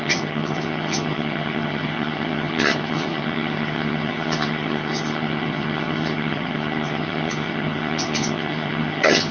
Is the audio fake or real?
fake